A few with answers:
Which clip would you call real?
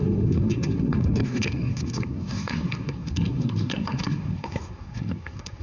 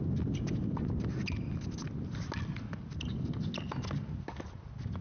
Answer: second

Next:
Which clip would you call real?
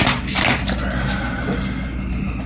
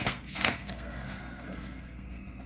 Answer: first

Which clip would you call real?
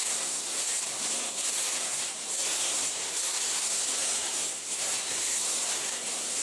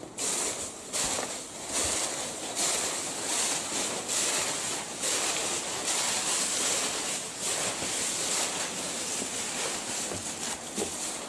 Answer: second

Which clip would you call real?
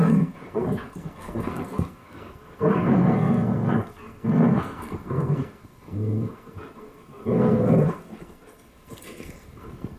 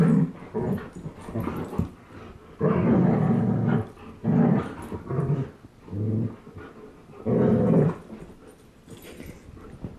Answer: second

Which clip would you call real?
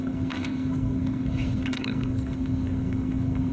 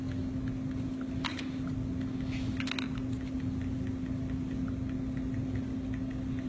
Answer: second